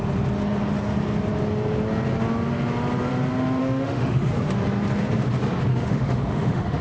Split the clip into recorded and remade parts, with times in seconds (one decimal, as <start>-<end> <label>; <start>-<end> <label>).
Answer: 0.0-3.6 recorded; 3.6-4.3 remade; 4.3-5.7 recorded; 5.7-6.8 remade

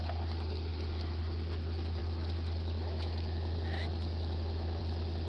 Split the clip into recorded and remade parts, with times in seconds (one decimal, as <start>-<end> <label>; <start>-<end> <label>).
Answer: 0.0-0.7 recorded; 0.7-1.2 remade; 1.2-2.0 recorded; 2.0-4.8 remade; 4.8-5.3 recorded

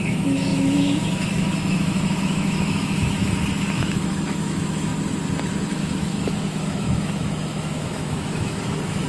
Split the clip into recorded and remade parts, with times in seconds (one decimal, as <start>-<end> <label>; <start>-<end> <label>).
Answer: 0.0-3.2 remade; 3.2-3.7 recorded; 3.7-4.9 remade; 4.9-5.7 recorded; 5.7-9.1 remade

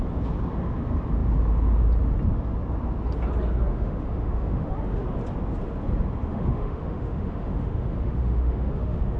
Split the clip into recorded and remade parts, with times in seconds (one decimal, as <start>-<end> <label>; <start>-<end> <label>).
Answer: 0.0-3.7 recorded; 3.7-4.7 remade; 4.7-6.3 recorded; 6.3-9.2 remade